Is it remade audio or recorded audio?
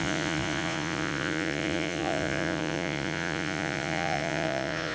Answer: remade